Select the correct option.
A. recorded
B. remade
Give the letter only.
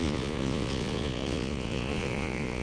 B